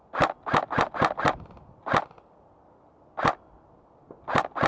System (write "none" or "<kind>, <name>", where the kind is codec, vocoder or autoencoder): none